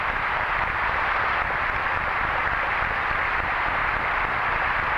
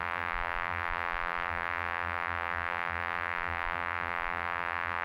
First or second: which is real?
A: first